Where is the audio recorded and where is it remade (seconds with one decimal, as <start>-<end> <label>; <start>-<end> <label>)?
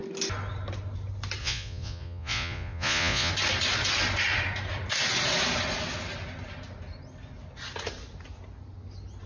0.0-1.4 recorded; 1.4-3.3 remade; 3.3-9.3 recorded